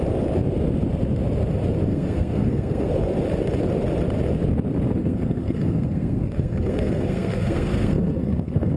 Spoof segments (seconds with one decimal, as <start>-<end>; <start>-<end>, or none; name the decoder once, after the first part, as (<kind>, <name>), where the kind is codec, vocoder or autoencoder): 1.9-2.9 (codec, SNAC); 5.0-8.8